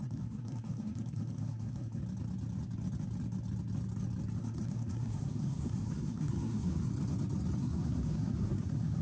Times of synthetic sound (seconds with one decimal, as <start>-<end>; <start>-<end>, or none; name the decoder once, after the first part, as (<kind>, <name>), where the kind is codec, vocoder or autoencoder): 0.0-2.0 (codec, SNAC); 4.4-6.9; 7.6-9.0